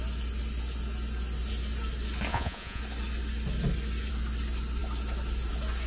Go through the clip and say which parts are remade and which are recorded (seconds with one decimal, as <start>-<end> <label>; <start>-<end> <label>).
0.0-2.3 recorded; 2.3-2.8 remade; 2.8-5.9 recorded